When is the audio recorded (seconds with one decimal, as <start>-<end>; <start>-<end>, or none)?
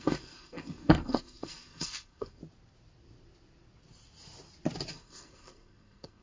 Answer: 2.4-4.9